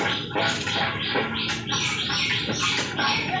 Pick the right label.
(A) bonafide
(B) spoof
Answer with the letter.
A